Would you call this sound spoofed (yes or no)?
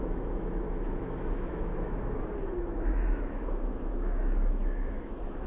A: yes